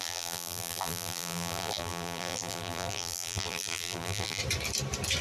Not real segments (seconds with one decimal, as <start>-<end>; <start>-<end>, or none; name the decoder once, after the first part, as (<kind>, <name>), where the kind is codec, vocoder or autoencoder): 0.0-4.4 (vocoder, BigVGAN v2)